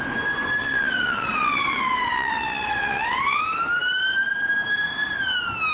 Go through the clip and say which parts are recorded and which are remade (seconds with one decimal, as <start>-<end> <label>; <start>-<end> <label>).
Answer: 0.0-0.6 recorded; 0.6-3.4 remade; 3.4-5.7 recorded